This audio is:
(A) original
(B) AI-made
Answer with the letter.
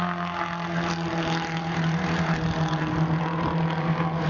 A